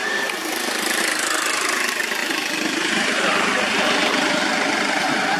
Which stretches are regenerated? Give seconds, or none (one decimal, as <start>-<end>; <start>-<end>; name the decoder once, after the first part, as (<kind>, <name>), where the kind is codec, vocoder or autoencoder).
0.0-5.4 (vocoder, BigVGAN v2)